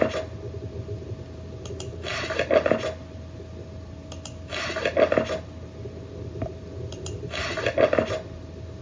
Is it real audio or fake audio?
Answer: real